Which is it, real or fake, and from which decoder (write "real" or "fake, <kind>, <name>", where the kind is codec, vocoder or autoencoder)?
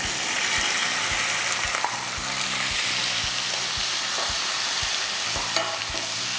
real